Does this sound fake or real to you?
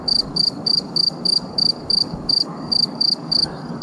fake